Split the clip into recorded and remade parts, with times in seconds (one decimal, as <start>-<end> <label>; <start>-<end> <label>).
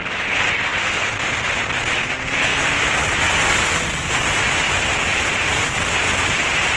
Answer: 0.0-6.8 recorded